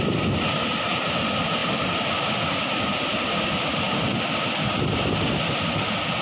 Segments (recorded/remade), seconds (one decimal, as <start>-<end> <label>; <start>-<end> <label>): 0.0-6.2 recorded